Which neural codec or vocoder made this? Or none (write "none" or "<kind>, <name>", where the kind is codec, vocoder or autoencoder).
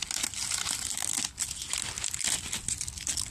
none